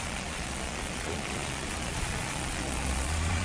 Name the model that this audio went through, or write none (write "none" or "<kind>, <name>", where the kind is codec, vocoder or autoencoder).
vocoder, Vocos